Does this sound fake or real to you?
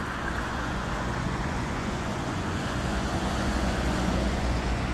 fake